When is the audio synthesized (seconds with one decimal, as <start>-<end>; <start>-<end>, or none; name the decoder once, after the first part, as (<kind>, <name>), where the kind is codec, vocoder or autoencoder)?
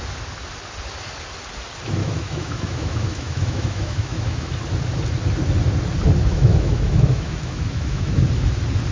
2.0-4.5 (autoencoder, DAC-VAE); 6.2-8.2